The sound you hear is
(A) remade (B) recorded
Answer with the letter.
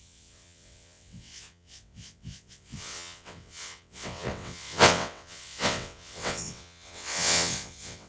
A